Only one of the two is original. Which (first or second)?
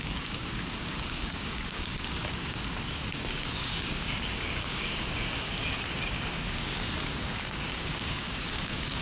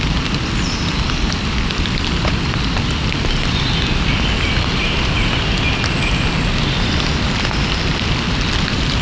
second